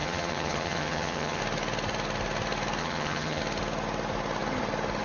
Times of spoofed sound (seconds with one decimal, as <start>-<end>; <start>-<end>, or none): 0.0-1.4; 2.8-3.4